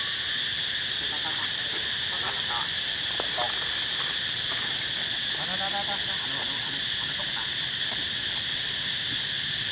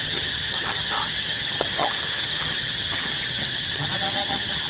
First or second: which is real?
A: first